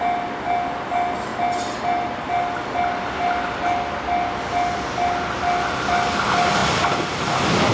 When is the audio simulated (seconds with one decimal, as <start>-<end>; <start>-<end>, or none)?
none